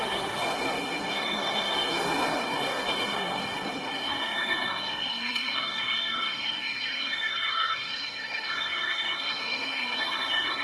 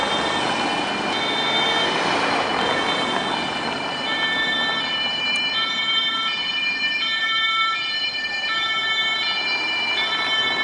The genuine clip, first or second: second